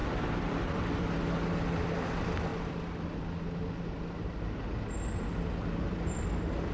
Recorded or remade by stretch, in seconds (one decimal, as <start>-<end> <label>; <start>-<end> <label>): 0.0-1.0 remade; 1.0-6.7 recorded